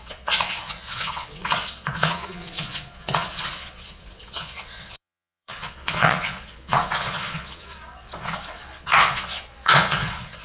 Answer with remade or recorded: remade